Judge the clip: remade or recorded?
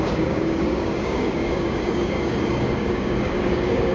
remade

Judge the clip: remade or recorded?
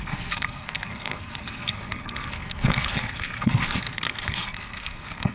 remade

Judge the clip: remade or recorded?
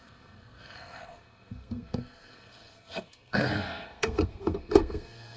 remade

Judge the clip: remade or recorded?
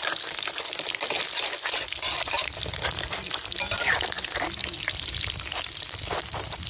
remade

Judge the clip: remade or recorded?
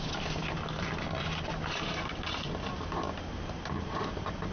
recorded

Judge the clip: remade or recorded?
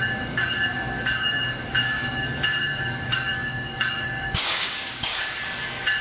remade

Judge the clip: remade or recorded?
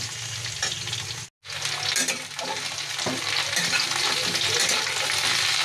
recorded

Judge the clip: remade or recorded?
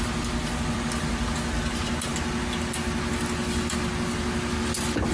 recorded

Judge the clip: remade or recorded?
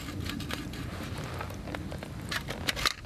recorded